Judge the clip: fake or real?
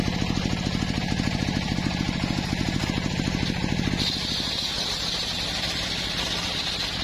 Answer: real